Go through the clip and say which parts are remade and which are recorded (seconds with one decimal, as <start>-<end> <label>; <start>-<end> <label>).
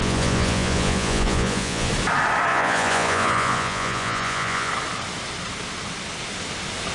0.0-1.9 remade; 1.9-2.5 recorded; 2.5-4.7 remade; 4.7-6.9 recorded